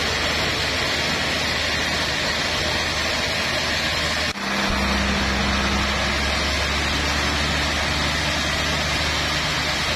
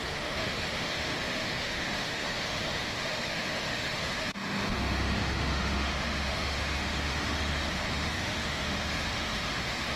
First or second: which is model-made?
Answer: second